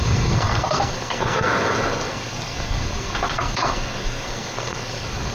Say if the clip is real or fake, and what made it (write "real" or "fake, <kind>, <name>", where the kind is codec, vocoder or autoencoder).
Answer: fake, codec, SNAC